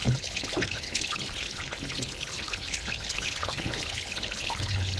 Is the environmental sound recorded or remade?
remade